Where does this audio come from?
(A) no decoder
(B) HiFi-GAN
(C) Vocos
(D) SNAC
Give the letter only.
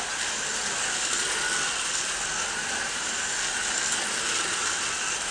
A